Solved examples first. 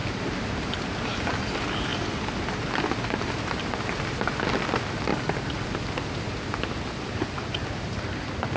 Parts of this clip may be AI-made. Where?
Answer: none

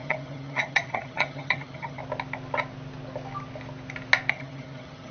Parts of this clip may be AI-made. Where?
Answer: 0.0-2.0 (vocoder, HiFi-GAN); 4.3-5.1

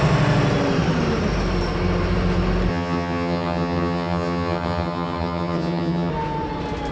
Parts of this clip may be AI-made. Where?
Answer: 2.7-6.1 (vocoder, HiFi-GAN)

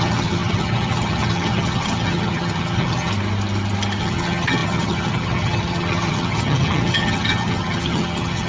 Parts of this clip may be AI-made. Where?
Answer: 0.0-3.1 (vocoder, HiFi-GAN); 4.0-8.5